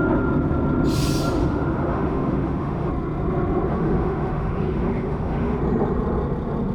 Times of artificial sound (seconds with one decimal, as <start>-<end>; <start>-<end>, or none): 1.4-2.9; 3.7-5.6